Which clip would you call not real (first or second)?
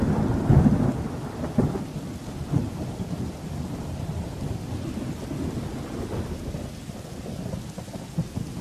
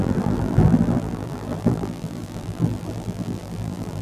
second